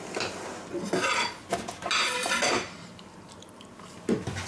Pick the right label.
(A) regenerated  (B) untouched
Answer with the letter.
B